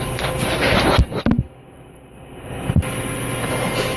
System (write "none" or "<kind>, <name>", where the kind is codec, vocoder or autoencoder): none